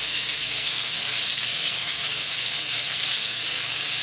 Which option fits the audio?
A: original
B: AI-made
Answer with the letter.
B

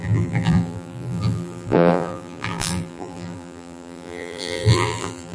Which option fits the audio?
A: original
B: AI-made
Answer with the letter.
B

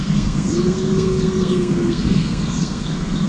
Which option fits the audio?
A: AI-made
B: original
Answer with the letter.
A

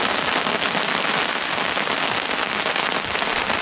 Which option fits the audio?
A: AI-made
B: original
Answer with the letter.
B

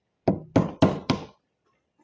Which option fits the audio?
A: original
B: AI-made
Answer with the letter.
A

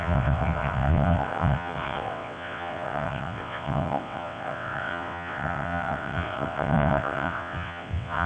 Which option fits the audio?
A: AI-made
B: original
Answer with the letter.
A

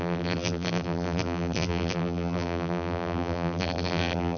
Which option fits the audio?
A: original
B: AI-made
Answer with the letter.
B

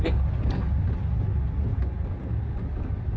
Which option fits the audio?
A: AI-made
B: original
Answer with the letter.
B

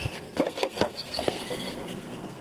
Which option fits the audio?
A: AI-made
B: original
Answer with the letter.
A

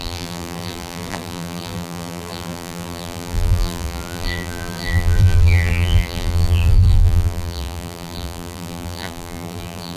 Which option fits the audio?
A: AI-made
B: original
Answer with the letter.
A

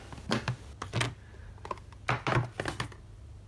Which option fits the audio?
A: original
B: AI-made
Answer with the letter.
A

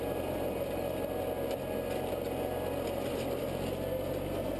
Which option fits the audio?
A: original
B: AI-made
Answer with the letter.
A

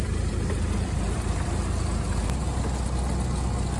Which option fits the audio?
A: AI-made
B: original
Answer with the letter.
B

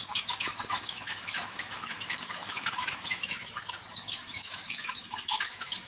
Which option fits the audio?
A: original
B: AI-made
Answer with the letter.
B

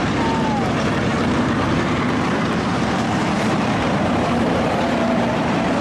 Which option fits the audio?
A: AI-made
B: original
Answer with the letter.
A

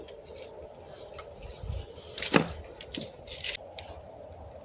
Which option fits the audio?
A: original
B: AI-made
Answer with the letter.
A